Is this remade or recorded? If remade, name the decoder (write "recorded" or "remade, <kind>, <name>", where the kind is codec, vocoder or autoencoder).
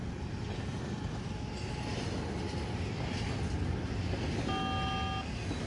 recorded